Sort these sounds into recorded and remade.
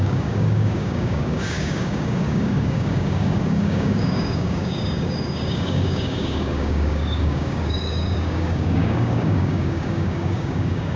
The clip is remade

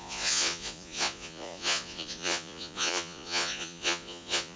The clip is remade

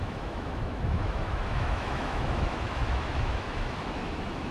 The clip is remade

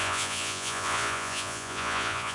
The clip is remade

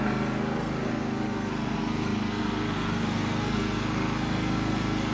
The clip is remade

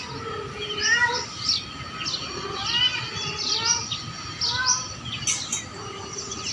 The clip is recorded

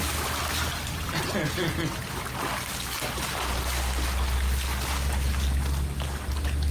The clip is recorded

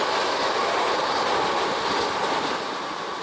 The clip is recorded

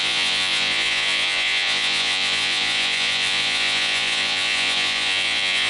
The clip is remade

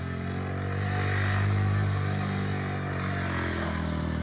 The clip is recorded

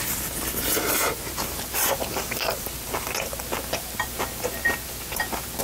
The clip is recorded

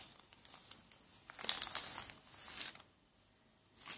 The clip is recorded